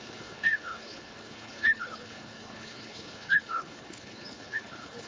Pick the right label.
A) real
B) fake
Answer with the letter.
B